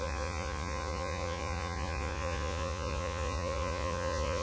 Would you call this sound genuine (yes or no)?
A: no